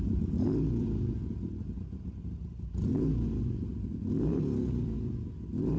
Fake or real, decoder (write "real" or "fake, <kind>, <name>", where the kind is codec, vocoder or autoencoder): real